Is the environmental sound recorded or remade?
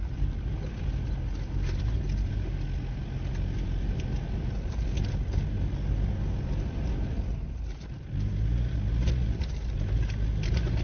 recorded